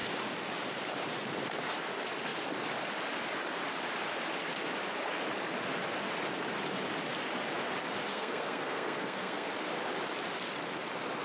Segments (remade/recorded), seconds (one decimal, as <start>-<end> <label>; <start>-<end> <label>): 0.0-8.1 recorded; 8.1-9.5 remade; 9.5-11.2 recorded